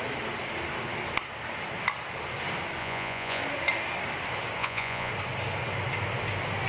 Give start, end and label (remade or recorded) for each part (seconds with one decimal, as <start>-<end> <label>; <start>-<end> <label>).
0.0-2.8 recorded; 2.8-3.4 remade; 3.4-4.6 recorded; 4.6-5.1 remade; 5.1-6.7 recorded